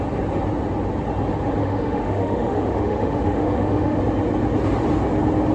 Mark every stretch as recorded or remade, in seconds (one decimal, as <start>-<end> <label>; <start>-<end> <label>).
0.0-1.6 recorded; 1.6-4.0 remade; 4.0-5.5 recorded